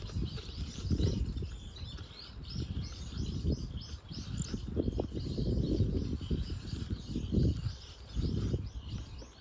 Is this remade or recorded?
recorded